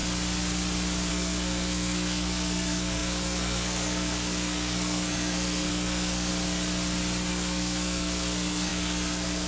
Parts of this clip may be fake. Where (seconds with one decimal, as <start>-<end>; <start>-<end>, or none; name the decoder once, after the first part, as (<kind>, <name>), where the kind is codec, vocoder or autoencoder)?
1.1-6.3 (codec, SNAC); 7.3-9.5